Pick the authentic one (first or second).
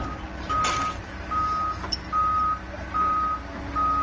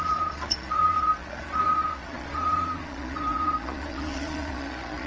first